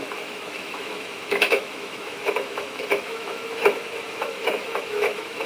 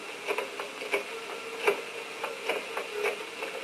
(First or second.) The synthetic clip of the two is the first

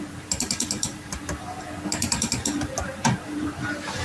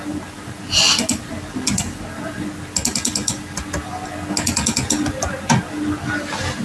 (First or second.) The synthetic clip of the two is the first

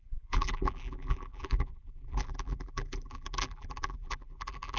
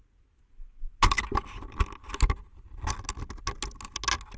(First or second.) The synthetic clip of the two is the first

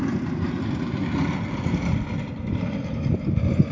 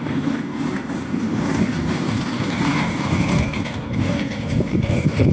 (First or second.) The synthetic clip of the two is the second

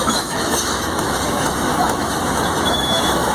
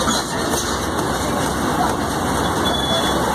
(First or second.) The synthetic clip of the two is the first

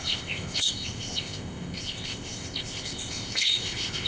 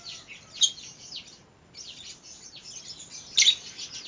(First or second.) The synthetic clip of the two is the first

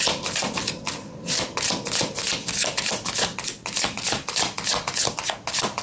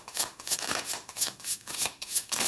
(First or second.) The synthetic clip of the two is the second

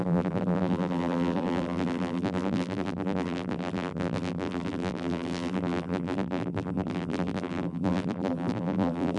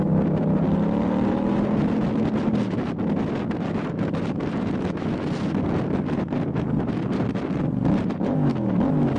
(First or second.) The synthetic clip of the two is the first